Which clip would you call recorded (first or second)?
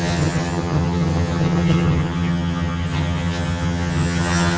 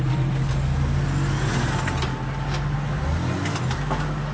second